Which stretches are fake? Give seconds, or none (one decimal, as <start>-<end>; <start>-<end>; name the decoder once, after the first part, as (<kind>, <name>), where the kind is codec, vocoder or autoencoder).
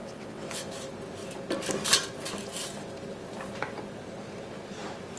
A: 0.0-0.7 (vocoder, WaveNeXt)